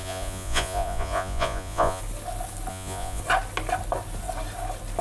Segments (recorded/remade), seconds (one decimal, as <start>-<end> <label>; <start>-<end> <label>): 0.0-2.0 remade; 2.0-2.7 recorded; 2.7-3.2 remade; 3.2-5.0 recorded